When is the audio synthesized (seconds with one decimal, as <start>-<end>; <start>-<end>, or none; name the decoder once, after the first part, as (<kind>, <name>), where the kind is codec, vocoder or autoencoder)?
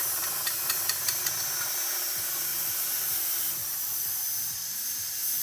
0.0-1.2 (vocoder, BigVGAN v2); 2.0-5.4